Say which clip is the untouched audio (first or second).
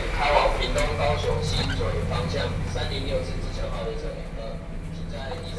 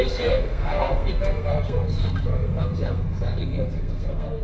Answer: first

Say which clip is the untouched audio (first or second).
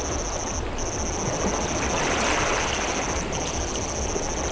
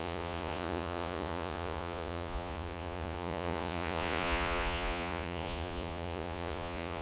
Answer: first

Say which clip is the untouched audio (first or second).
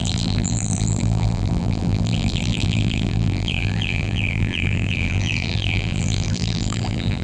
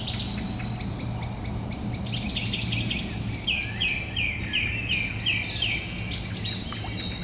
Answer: second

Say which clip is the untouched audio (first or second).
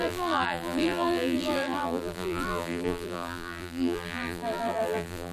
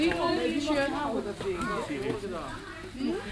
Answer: second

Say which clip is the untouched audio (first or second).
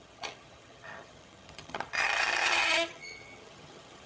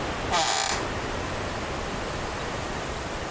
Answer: second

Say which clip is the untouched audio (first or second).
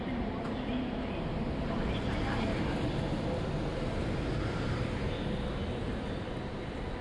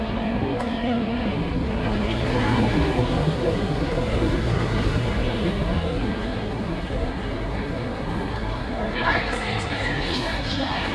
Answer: first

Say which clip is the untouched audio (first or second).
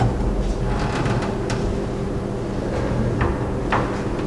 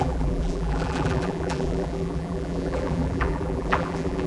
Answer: first